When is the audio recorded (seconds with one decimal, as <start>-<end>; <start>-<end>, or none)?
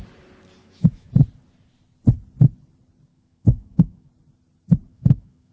0.0-0.6; 1.1-3.1; 4.1-4.9